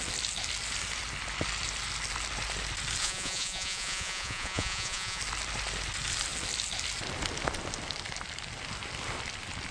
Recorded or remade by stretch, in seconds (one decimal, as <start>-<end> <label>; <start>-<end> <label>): 0.0-3.0 recorded; 3.0-5.2 remade; 5.2-9.7 recorded